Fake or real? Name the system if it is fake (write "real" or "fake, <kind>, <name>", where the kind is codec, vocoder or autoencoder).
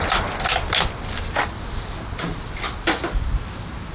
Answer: real